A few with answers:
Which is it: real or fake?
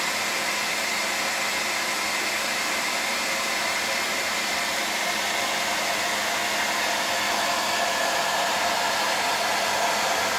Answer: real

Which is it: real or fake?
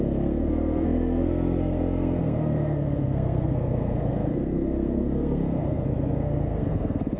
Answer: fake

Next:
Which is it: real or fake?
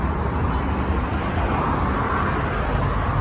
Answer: real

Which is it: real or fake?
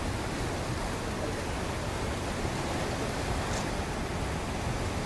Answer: real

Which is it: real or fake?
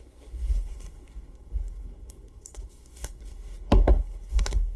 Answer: fake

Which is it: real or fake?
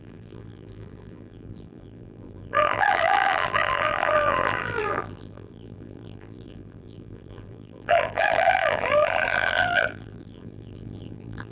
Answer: fake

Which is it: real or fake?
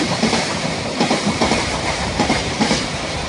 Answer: fake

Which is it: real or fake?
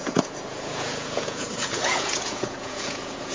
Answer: fake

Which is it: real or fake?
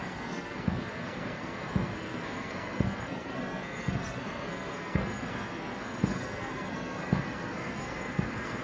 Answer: fake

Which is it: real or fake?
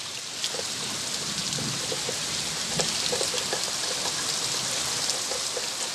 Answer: real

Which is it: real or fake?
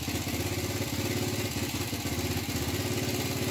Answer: real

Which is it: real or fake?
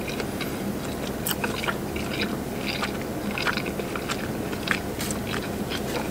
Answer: real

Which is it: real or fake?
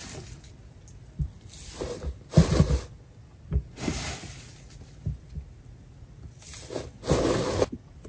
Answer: real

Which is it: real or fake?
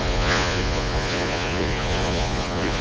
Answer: fake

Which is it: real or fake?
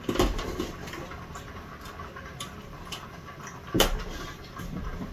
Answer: real